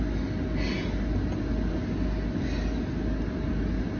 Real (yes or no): yes